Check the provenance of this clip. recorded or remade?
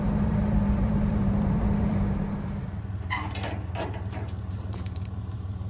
remade